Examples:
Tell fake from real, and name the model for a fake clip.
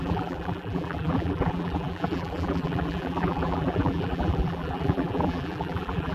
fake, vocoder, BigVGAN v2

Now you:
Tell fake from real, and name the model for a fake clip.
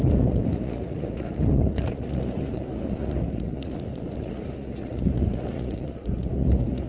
fake, vocoder, Vocos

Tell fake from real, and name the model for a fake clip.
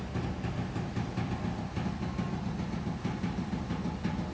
real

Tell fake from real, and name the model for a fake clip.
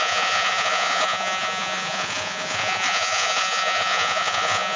fake, vocoder, Vocos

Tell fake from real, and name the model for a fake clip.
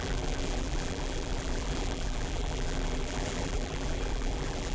fake, vocoder, BigVGAN v2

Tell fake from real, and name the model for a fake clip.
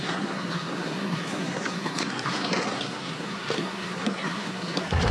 fake, codec, SNAC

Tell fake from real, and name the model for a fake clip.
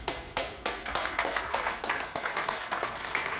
fake, codec, SNAC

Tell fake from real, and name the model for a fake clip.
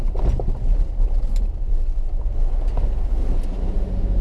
real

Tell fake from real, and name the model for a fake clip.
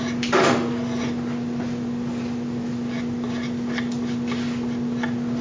real